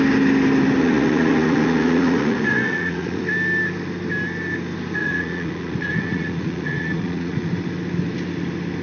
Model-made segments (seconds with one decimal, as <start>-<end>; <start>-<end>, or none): 0.8-3.2; 5.0-7.5